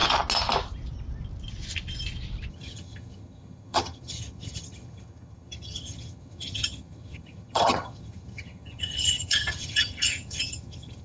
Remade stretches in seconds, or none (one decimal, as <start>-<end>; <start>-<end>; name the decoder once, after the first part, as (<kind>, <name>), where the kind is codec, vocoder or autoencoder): 2.5-11.0 (vocoder, HiFi-GAN)